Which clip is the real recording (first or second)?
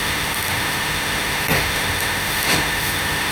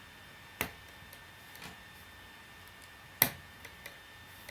second